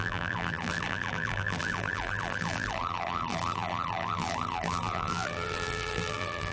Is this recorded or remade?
remade